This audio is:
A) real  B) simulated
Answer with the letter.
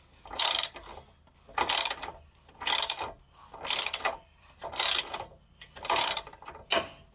A